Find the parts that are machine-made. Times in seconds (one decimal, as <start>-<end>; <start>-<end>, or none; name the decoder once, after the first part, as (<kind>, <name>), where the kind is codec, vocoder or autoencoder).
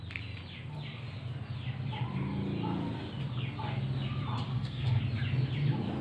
4.5-5.0 (codec, SNAC)